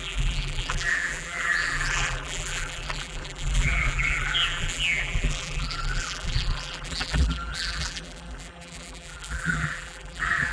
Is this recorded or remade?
remade